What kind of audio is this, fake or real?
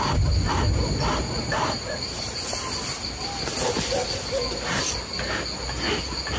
real